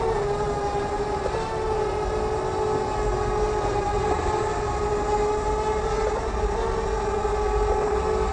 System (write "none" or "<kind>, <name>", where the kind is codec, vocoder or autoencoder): none